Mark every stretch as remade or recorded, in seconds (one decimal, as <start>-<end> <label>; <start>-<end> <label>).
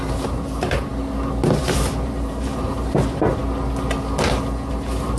0.0-0.9 remade; 0.9-1.6 recorded; 1.6-3.4 remade; 3.4-4.7 recorded; 4.7-5.2 remade